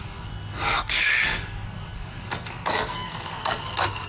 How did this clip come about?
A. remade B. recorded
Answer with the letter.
A